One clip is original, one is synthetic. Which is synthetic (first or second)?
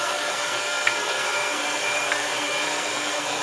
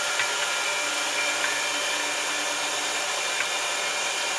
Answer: first